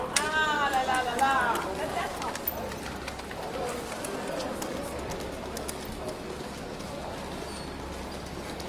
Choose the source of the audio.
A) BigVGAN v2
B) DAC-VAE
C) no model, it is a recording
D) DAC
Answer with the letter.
C